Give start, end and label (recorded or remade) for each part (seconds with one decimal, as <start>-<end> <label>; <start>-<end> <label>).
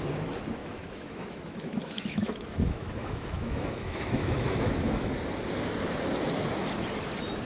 0.0-0.6 recorded; 0.6-5.1 remade; 5.1-7.5 recorded